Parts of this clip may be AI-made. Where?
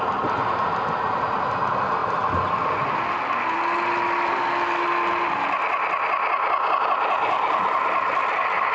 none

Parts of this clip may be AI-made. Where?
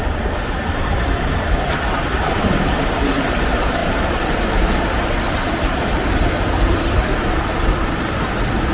0.0-8.7 (vocoder, BigVGAN v2)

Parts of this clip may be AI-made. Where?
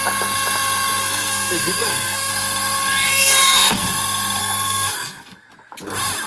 1.0-2.3 (codec, SNAC); 3.1-3.9; 4.4-5.5